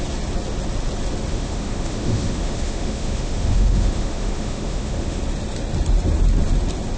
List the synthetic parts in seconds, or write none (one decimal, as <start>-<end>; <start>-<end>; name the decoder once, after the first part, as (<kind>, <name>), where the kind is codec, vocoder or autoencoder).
1.3-5.2 (autoencoder, DAC-VAE)